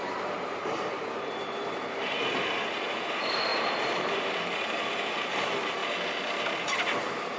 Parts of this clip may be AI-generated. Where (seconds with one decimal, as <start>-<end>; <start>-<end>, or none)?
0.0-5.8; 6.6-7.4